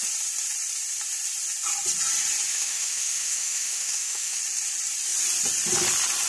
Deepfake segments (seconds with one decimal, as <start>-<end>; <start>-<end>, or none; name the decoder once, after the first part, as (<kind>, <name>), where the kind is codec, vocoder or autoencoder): 2.5-4.4 (autoencoder, DAC-VAE)